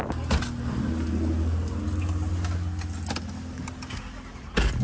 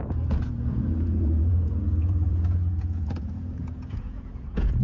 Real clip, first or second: first